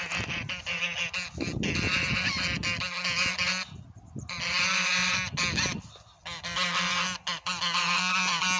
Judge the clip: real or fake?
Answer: real